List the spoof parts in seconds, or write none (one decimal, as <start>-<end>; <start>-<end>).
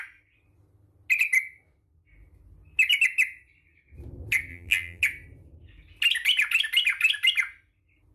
4.5-5.0